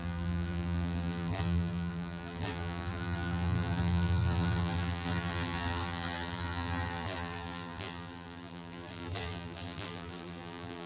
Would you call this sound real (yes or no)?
no